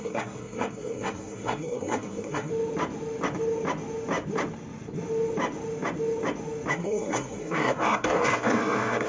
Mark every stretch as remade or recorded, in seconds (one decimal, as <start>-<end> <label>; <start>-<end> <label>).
0.0-2.5 remade; 2.5-6.7 recorded; 6.7-9.1 remade